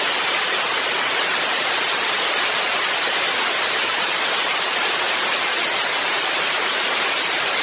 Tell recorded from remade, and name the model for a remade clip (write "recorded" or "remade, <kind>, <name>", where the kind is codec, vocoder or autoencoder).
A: recorded